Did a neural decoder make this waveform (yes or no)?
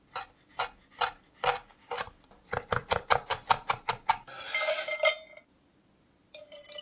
no